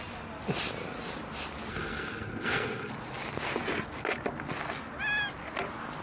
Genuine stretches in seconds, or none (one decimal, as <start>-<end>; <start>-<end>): 0.0-1.7; 2.9-6.0